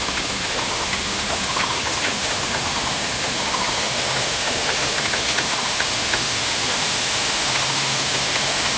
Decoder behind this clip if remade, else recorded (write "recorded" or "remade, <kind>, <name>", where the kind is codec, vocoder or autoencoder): remade, autoencoder, DAC-VAE